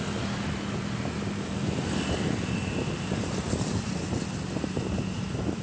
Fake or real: real